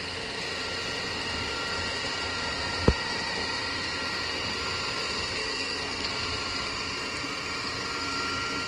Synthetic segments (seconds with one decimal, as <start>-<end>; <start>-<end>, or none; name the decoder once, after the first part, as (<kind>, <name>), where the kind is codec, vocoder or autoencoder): 5.4-6.1 (codec, SNAC)